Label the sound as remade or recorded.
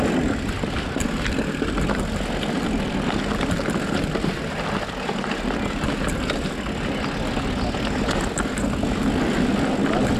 recorded